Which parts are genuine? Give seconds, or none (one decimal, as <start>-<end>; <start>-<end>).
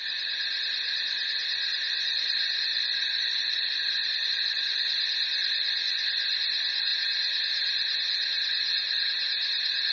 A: 0.0-6.9